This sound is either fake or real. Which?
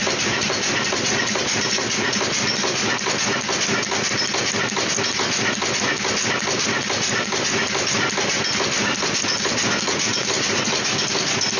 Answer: real